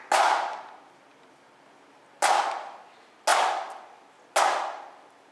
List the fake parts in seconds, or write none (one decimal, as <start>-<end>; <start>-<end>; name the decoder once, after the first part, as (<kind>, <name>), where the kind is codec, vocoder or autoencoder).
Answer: none